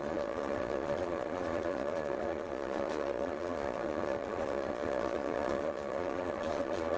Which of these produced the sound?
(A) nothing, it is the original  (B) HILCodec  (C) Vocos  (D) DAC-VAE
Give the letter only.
C